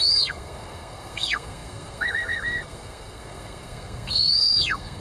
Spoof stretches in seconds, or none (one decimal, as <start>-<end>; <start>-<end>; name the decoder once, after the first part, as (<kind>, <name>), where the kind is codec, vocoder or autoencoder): 0.0-5.0 (codec, SNAC)